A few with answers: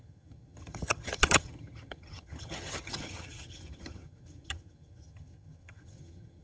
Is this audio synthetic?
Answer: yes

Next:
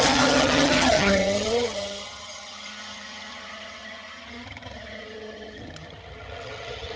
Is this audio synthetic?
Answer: yes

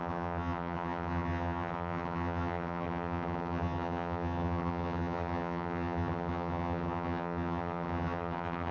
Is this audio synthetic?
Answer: yes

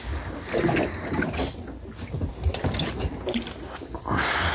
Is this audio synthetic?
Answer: no